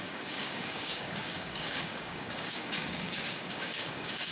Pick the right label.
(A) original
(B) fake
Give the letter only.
B